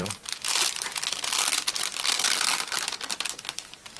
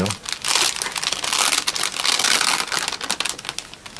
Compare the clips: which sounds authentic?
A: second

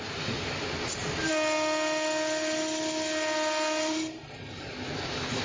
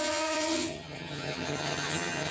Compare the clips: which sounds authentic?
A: first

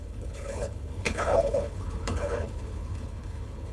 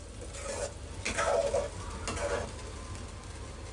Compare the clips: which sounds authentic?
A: second